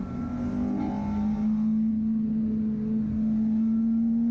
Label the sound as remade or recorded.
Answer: recorded